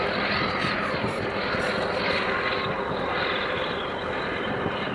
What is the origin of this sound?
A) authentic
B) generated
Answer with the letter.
A